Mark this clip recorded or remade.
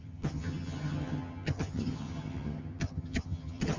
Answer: remade